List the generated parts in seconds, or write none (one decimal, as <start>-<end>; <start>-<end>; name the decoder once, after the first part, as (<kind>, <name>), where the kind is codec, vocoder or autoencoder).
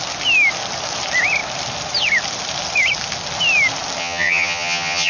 4.0-5.1 (vocoder, HiFi-GAN)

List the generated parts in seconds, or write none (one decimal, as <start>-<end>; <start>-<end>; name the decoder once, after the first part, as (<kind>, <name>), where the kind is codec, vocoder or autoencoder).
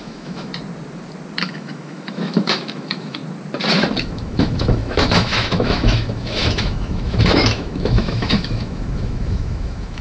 0.0-0.5 (autoencoder, DAC-VAE); 1.4-3.2; 4.0-10.0